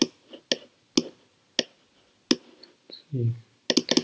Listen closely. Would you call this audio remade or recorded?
recorded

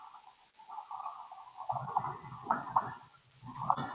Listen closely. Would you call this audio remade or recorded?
remade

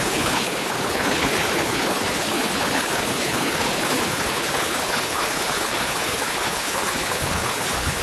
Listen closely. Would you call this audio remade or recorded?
remade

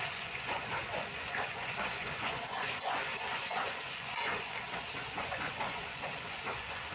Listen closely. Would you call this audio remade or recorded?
remade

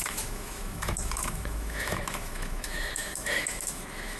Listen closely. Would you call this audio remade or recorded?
remade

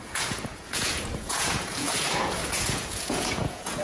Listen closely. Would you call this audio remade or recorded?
remade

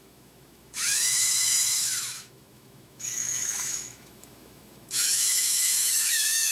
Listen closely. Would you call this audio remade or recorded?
remade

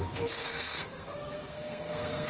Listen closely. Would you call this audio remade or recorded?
remade